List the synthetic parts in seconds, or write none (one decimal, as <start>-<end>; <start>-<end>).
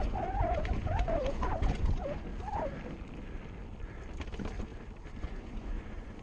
0.0-2.3; 5.2-6.2